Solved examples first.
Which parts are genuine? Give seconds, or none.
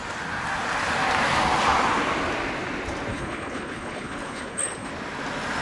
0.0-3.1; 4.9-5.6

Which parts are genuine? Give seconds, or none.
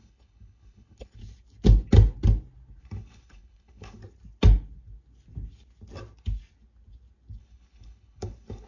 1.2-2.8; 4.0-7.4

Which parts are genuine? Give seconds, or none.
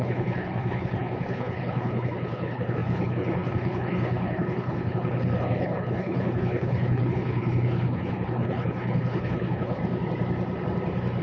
9.8-11.2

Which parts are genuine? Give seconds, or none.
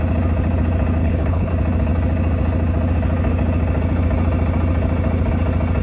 0.0-1.0; 1.5-5.8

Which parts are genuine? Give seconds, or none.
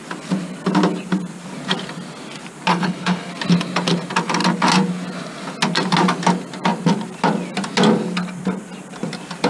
0.0-2.7; 3.3-9.5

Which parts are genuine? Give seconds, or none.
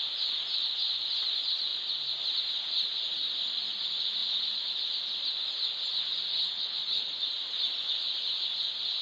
0.0-6.3; 7.1-9.0